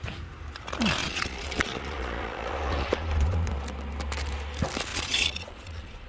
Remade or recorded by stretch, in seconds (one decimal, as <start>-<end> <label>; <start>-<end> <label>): 0.0-1.0 recorded; 1.0-3.5 remade; 3.5-4.9 recorded; 4.9-6.1 remade